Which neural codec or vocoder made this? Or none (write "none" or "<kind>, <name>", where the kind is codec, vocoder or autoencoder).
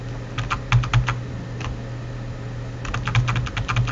none